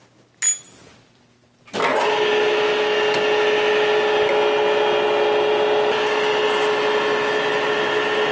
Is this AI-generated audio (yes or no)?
no